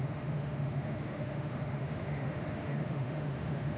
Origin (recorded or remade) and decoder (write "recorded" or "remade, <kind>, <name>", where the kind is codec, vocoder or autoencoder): remade, autoencoder, DAC-VAE